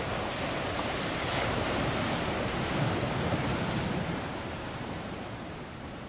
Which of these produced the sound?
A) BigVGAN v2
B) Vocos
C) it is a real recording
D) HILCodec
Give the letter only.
A